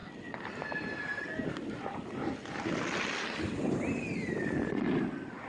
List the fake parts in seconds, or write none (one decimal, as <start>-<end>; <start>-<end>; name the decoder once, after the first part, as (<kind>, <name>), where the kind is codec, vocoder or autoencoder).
none